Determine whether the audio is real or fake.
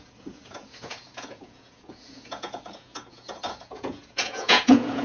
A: fake